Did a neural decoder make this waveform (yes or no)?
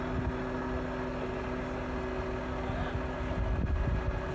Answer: no